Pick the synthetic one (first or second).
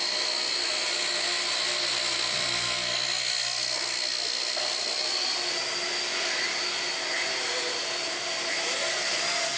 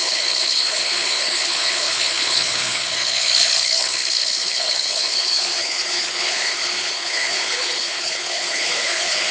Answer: second